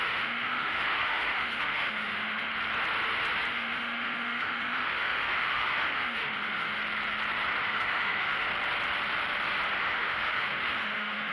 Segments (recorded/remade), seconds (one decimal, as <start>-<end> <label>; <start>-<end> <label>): 0.0-2.5 remade; 2.5-3.5 recorded; 3.5-6.8 remade; 6.8-7.6 recorded; 7.6-8.5 remade; 8.5-9.8 recorded; 9.8-11.3 remade